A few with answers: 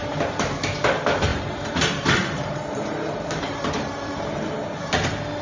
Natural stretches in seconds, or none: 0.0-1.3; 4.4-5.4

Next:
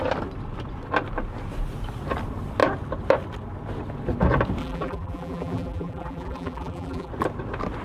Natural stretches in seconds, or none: 0.0-4.6; 7.1-7.8

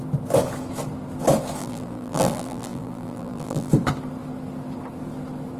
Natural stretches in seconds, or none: 0.0-1.6; 3.7-5.6

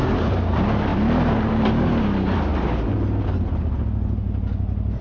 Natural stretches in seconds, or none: 0.0-5.0

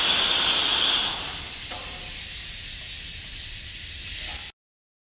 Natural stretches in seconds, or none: 0.0-0.7; 2.2-3.1; 4.3-5.2